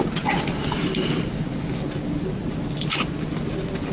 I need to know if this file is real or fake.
real